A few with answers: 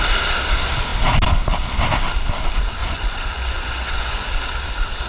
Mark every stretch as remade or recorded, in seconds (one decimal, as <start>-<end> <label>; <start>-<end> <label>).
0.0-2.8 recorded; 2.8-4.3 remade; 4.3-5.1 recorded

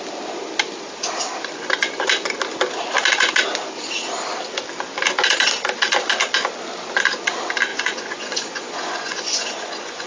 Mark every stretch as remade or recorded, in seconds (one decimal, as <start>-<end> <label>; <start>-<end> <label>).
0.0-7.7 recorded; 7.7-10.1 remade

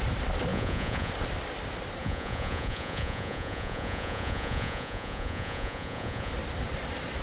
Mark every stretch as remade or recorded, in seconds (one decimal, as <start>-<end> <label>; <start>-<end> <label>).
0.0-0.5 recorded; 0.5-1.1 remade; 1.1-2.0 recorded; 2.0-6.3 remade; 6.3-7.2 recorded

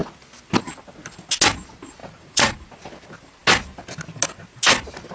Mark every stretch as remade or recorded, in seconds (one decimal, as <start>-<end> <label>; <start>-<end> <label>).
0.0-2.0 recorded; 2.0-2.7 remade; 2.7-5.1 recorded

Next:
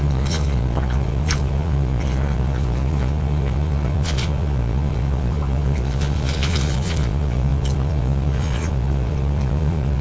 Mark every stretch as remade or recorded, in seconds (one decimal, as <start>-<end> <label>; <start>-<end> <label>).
0.0-10.0 remade

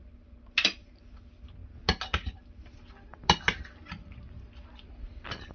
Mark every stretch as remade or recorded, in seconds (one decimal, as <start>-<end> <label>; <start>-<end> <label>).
0.0-5.5 recorded